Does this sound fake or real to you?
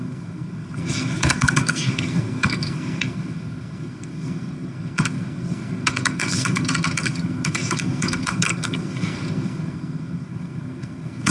fake